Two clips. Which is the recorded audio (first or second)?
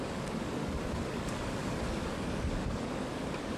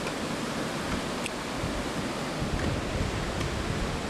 second